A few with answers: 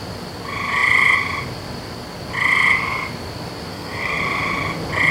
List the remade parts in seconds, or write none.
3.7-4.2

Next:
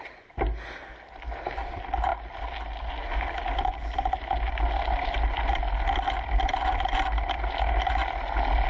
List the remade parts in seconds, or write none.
none

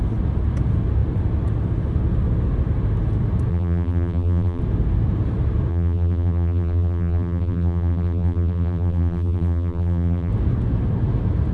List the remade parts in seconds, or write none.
3.5-4.6; 5.7-10.3

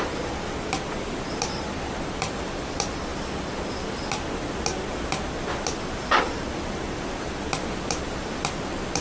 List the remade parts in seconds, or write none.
0.0-3.1; 6.2-9.0